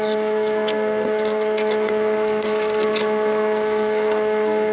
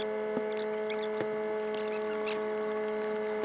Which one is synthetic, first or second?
first